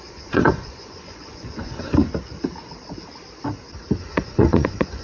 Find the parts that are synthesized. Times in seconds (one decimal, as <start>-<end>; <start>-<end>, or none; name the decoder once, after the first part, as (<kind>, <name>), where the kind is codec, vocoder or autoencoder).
0.0-2.0 (vocoder, Vocos); 4.0-5.0